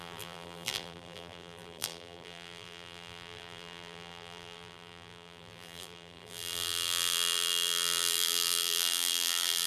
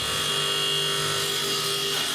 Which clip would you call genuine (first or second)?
second